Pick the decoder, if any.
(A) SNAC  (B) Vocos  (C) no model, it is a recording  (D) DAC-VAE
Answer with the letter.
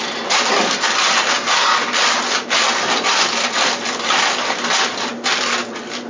C